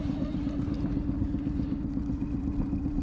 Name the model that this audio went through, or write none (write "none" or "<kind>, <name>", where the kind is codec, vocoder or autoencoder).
none